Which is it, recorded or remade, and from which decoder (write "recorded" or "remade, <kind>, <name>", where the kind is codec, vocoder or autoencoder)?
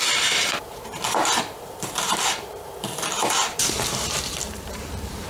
remade, vocoder, BigVGAN v2